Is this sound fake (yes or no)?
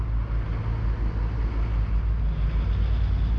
no